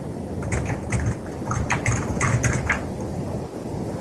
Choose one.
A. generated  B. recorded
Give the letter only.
B